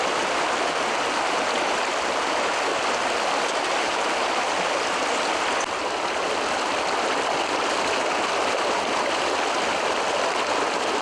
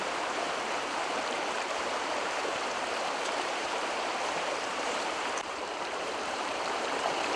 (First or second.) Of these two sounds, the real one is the first